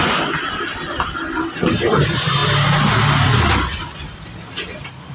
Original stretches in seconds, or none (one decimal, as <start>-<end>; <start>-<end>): 0.0-5.1